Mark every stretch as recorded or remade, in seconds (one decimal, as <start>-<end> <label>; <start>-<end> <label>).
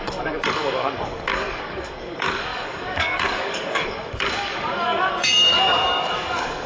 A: 0.0-6.7 remade